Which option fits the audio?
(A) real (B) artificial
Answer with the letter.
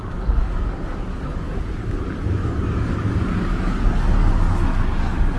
B